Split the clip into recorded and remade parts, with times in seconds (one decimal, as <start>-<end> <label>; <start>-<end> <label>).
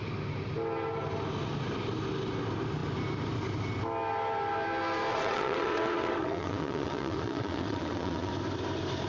0.0-5.1 recorded; 5.1-8.3 remade; 8.3-9.1 recorded